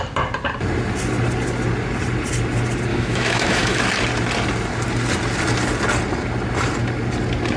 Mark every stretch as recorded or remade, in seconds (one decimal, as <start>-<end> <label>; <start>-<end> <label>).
0.0-2.9 recorded; 2.9-3.8 remade; 3.8-7.6 recorded

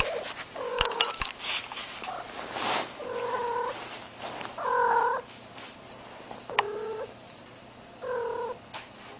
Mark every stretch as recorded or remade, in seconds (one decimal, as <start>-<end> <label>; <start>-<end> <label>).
0.0-0.7 recorded; 0.7-1.3 remade; 1.3-6.8 recorded; 6.8-7.4 remade; 7.4-9.2 recorded

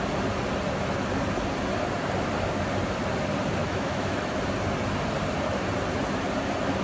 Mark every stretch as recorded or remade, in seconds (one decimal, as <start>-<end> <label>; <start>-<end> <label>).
0.0-3.6 recorded; 3.6-4.4 remade; 4.4-6.8 recorded

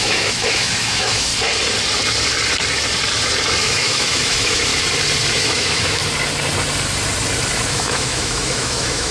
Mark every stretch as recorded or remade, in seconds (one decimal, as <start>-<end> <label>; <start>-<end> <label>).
0.0-1.3 remade; 1.3-3.6 recorded; 3.6-4.7 remade; 4.7-5.3 recorded; 5.3-6.0 remade; 6.0-7.7 recorded; 7.7-9.1 remade

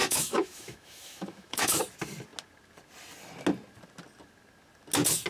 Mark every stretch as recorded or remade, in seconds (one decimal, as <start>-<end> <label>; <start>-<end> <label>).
0.0-1.8 remade; 1.8-5.3 recorded

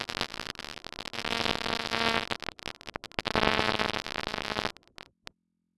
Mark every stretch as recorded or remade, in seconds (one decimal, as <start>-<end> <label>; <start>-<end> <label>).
0.0-5.8 recorded

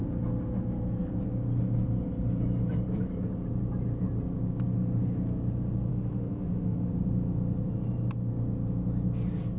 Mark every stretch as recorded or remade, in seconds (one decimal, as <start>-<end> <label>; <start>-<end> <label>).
0.0-5.9 recorded; 5.9-6.9 remade; 6.9-9.6 recorded

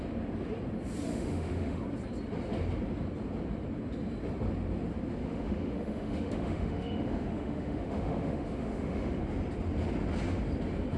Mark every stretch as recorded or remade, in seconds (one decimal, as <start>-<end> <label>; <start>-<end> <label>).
0.0-1.1 recorded; 1.1-1.8 remade; 1.8-5.2 recorded; 5.2-9.2 remade; 9.2-11.0 recorded